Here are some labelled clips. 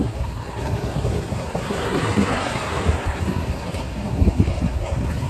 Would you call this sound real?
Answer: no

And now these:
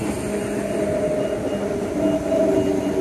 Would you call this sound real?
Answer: yes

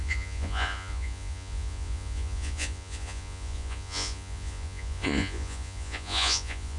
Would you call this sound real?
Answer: no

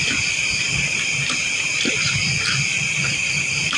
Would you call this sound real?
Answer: yes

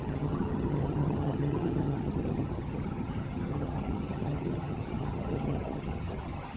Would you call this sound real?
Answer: no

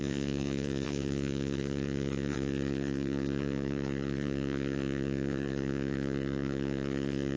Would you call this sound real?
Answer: no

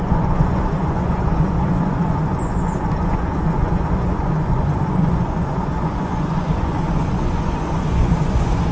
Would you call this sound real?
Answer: no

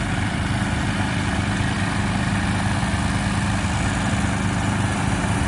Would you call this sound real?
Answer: yes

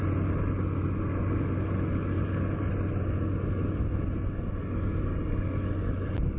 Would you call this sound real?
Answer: yes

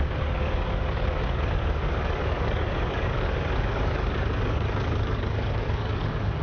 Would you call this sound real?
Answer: no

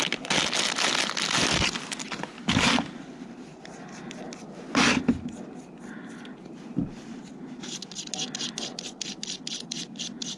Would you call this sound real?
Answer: yes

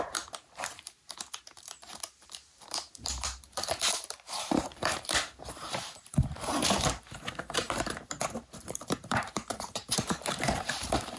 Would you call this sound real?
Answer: no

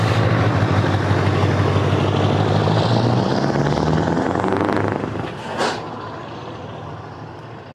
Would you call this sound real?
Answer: yes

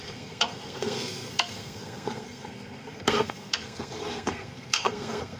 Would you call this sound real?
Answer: no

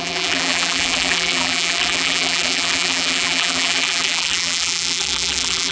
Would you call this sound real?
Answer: no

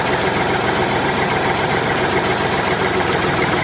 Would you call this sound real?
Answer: no